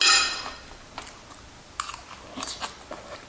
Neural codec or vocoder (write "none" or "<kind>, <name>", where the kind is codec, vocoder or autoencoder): none